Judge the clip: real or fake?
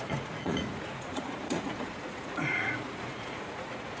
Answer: fake